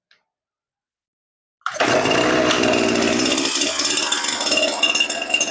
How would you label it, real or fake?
real